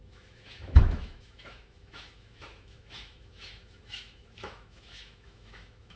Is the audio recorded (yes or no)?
no